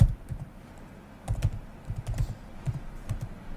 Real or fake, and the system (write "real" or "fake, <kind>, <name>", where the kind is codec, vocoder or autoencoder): real